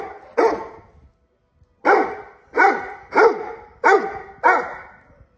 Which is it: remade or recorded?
recorded